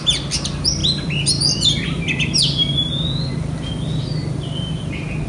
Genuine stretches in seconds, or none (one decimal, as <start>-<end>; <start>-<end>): 0.0-5.3